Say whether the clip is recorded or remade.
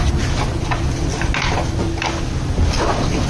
recorded